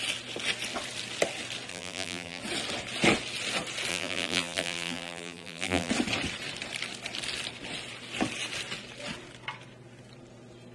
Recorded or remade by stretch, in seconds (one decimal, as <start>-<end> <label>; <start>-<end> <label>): 0.0-1.7 recorded; 1.7-2.4 remade; 2.4-3.9 recorded; 3.9-5.9 remade; 5.9-10.7 recorded

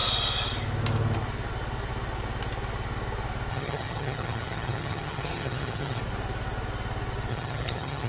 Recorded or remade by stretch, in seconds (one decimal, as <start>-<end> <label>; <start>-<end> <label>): 0.0-3.5 recorded; 3.5-6.0 remade; 6.0-7.3 recorded; 7.3-8.1 remade

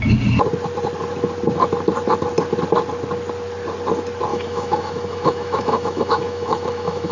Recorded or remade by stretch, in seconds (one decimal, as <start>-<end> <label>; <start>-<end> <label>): 0.0-4.3 recorded; 4.3-7.1 remade

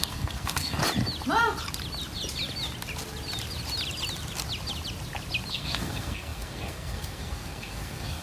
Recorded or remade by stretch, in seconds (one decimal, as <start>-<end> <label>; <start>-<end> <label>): 0.0-0.8 remade; 0.8-5.5 recorded; 5.5-8.2 remade

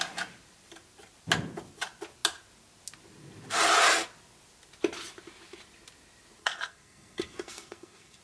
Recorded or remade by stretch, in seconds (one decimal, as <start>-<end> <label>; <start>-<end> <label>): 0.0-6.4 recorded; 6.4-8.2 remade

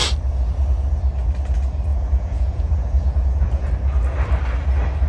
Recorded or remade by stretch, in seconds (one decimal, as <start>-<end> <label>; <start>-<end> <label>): 0.0-1.9 recorded; 1.9-3.7 remade; 3.7-5.1 recorded

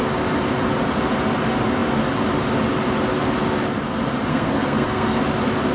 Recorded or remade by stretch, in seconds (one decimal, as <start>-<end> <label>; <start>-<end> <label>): 0.0-4.3 recorded; 4.3-5.2 remade; 5.2-5.7 recorded